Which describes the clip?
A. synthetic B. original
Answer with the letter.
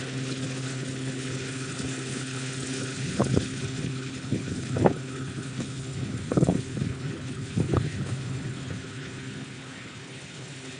A